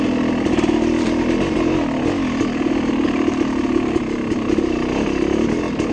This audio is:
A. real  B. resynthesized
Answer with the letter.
A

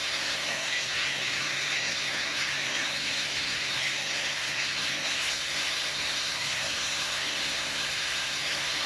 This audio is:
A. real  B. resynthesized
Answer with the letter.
B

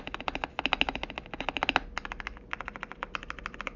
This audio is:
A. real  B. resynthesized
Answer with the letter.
A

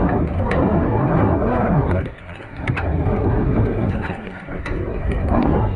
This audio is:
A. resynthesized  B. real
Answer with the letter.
A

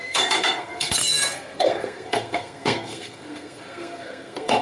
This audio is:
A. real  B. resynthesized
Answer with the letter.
B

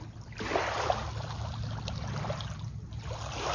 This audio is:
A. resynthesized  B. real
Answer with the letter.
B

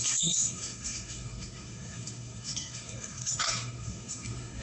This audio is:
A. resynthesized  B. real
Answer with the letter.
A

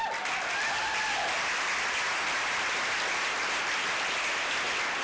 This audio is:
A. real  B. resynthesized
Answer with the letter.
A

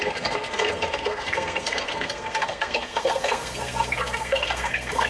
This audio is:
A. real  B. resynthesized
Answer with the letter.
B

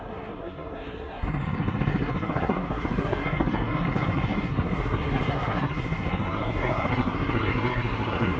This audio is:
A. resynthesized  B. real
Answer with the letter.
A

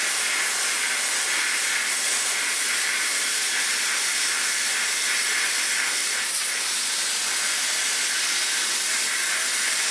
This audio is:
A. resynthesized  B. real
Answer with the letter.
B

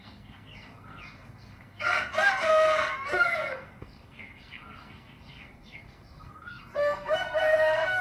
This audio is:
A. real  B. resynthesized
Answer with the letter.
B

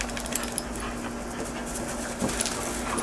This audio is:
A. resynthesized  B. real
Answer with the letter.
B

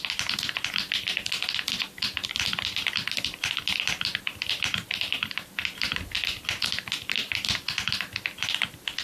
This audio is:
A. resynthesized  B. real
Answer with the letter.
B